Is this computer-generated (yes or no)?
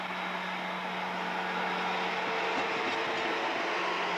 no